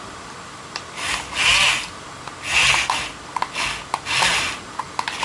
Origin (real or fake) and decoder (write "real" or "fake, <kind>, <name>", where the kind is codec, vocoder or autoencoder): real